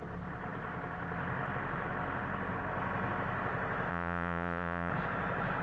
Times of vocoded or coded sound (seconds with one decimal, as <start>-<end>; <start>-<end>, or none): 3.9-4.9